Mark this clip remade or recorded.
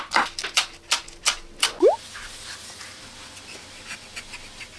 recorded